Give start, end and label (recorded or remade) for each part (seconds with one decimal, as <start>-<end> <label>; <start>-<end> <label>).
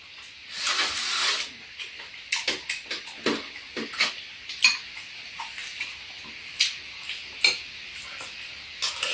0.0-9.1 recorded